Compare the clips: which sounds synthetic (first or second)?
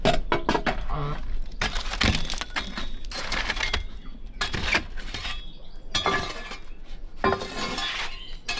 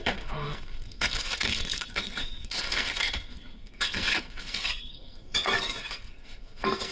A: second